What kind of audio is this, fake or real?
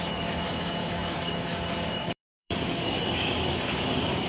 fake